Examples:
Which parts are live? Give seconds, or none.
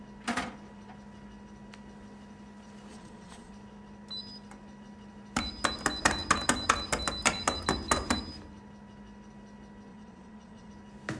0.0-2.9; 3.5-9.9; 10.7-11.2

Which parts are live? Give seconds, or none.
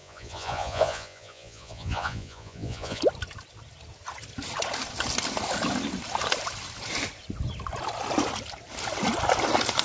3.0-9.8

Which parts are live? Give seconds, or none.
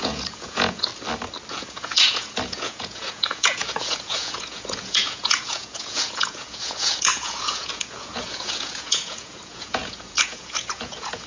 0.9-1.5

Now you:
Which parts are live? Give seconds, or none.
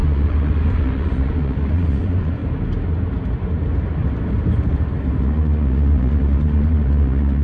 2.4-5.2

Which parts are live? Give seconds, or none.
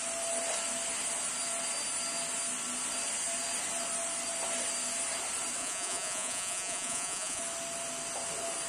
0.0-5.6; 7.4-8.7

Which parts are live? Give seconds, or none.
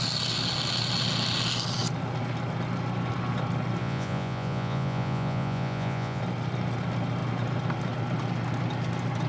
0.0-3.8; 6.2-9.3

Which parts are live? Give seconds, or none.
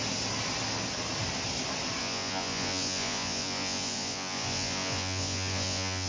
0.0-2.0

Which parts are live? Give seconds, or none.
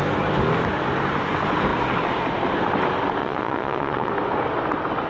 0.0-3.2; 4.1-5.1